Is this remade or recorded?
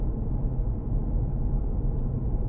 recorded